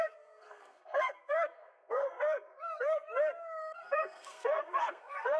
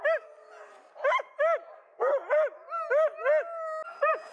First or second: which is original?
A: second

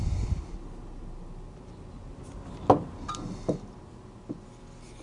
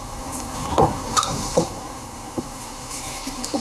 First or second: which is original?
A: first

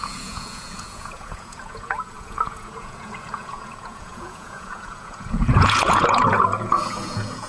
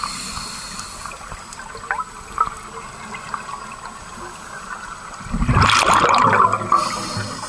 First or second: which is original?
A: second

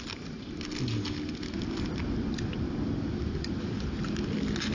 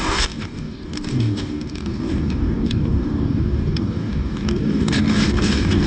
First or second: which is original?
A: first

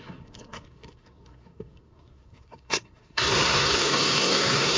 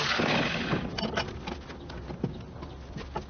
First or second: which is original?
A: second